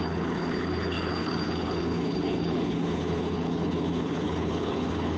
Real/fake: fake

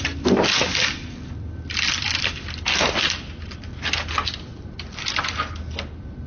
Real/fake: real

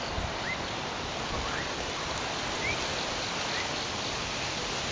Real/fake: fake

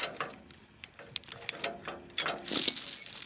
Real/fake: real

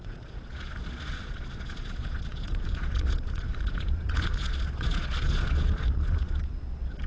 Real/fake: fake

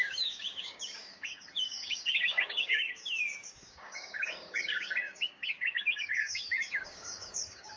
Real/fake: fake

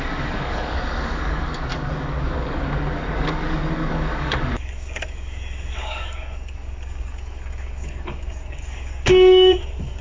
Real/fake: fake